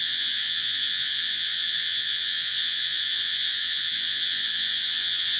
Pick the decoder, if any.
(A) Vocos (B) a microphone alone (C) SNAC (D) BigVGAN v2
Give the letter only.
A